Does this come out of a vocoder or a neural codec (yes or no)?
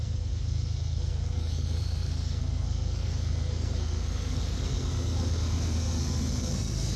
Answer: yes